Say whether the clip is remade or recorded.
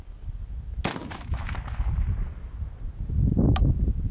recorded